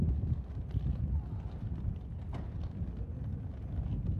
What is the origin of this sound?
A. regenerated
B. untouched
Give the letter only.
B